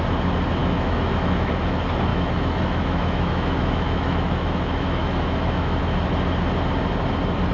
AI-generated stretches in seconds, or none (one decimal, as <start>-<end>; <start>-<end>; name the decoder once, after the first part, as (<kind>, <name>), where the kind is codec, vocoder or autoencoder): 0.6-1.5 (autoencoder, DAC-VAE); 2.1-5.8